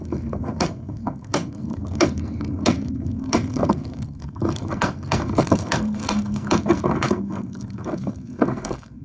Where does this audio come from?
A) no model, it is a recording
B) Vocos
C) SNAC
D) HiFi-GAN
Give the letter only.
C